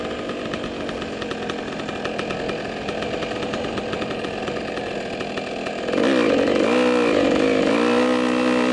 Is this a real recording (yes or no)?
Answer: yes